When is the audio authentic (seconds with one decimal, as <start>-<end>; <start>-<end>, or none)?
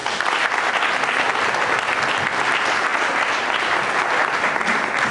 0.0-5.1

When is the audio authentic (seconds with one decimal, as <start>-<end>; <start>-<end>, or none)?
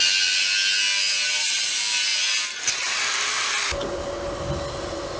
0.0-5.2